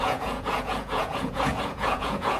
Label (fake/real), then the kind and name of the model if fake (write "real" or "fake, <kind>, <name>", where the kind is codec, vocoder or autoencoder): fake, vocoder, Vocos